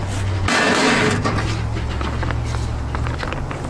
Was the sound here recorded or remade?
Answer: recorded